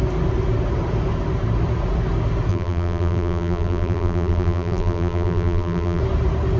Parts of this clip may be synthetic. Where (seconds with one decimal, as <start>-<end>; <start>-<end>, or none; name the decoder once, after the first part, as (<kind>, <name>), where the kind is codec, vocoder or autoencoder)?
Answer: 2.5-6.0 (vocoder, BigVGAN v2)